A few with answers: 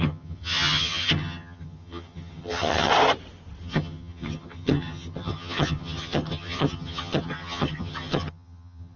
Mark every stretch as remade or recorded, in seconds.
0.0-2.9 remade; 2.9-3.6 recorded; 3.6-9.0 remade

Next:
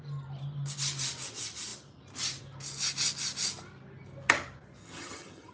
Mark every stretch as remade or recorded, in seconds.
0.0-4.8 recorded; 4.8-5.5 remade